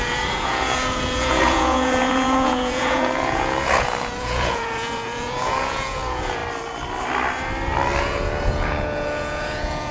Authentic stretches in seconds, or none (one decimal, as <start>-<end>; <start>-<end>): 6.4-8.0